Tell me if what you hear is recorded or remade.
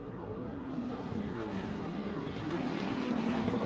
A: remade